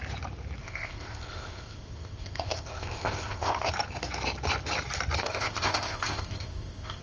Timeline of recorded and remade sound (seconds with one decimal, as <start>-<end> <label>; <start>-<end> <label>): 0.0-0.6 recorded; 0.6-3.7 remade; 3.7-5.2 recorded; 5.2-7.0 remade